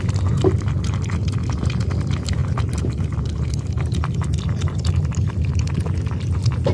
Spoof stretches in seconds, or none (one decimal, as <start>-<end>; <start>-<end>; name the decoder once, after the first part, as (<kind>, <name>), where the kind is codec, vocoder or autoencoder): none